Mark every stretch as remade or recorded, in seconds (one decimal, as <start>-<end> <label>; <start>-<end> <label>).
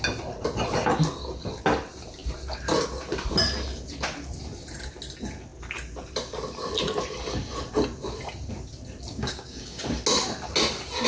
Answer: 0.0-9.1 recorded; 9.1-9.8 remade; 9.8-11.1 recorded